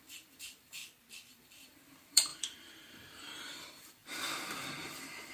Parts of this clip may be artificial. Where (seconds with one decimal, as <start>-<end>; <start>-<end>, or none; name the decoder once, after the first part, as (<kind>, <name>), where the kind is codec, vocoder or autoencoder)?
0.0-0.8 (vocoder, BigVGAN v2); 1.3-5.3